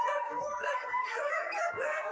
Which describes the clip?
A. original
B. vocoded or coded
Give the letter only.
B